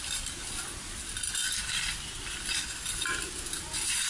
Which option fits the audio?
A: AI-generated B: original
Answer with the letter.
B